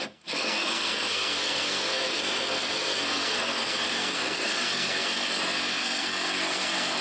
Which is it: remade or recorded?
remade